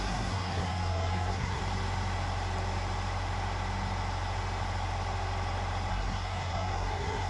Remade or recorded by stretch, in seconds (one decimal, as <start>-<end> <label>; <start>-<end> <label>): 0.0-1.6 remade; 1.6-5.9 recorded; 5.9-7.3 remade